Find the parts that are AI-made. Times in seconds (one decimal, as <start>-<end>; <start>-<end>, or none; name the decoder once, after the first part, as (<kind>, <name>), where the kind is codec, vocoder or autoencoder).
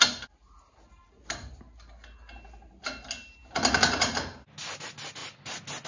none